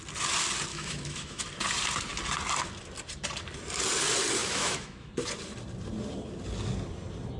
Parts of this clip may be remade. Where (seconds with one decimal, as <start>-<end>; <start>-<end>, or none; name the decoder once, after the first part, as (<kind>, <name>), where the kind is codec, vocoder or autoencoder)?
0.7-1.4 (autoencoder, DAC-VAE); 4.4-5.1